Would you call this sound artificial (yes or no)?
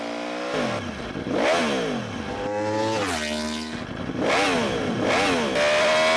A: no